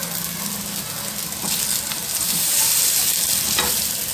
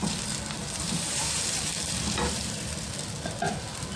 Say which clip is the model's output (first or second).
second